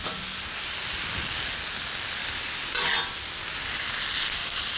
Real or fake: real